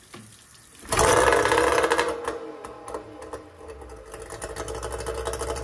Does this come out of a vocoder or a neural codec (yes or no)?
no